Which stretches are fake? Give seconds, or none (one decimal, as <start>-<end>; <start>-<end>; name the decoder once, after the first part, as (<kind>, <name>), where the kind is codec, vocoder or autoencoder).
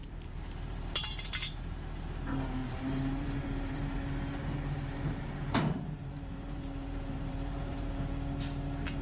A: 0.0-1.5 (vocoder, BigVGAN v2); 2.6-7.9